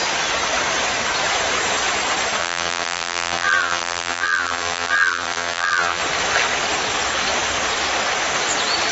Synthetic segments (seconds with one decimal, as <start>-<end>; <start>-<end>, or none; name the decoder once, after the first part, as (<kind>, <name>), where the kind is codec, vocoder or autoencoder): 2.4-6.0 (vocoder, BigVGAN v2)